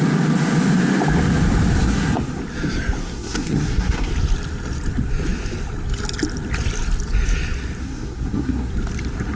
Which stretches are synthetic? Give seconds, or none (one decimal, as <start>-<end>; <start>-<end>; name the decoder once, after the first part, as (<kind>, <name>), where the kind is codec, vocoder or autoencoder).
1.8-2.4 (codec, SNAC); 3.0-4.1; 7.8-8.7